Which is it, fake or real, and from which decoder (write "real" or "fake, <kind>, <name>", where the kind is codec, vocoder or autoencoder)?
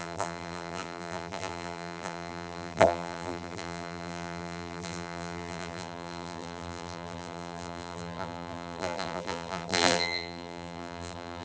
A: fake, vocoder, BigVGAN v2